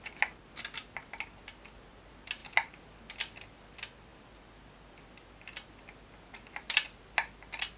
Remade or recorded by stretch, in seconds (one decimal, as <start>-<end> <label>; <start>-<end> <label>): 0.0-7.8 recorded